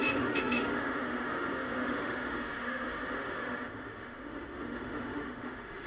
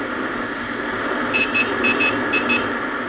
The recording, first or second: second